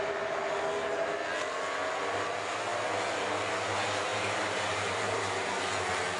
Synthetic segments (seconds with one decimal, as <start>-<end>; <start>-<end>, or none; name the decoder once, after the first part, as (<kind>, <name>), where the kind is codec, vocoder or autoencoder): 4.1-5.6 (vocoder, BigVGAN v2)